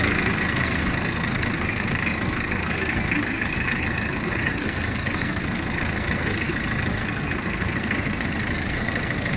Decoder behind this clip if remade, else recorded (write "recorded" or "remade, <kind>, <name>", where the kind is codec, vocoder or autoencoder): remade, codec, SNAC